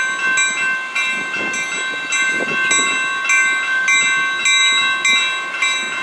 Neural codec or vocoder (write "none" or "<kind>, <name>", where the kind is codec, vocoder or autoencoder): none